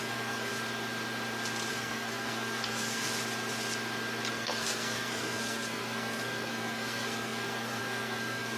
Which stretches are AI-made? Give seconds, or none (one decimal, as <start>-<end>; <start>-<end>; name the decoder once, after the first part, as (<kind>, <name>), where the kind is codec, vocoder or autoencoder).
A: 0.0-0.5 (codec, SNAC); 1.7-3.1; 4.3-8.6